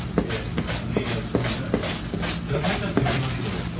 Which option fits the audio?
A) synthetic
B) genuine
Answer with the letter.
B